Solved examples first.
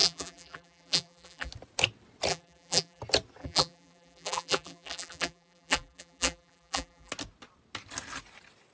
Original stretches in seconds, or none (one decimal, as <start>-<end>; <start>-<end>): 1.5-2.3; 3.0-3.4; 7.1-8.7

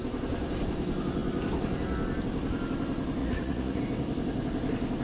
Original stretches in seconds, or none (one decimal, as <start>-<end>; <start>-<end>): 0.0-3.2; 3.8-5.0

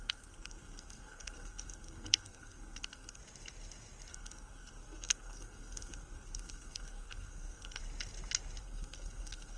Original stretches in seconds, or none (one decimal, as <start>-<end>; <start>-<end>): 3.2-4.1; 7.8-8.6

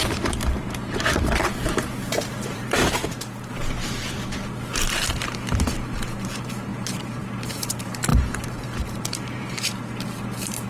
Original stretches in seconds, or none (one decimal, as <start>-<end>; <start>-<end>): 2.8-3.5

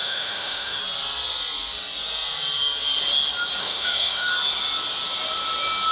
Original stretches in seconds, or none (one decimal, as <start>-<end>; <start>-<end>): 0.8-3.6; 4.3-5.9

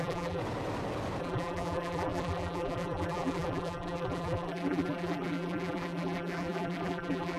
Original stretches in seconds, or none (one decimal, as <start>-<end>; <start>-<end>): 0.4-1.2